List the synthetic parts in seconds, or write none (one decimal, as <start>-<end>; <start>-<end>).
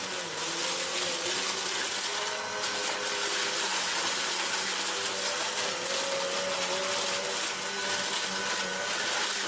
none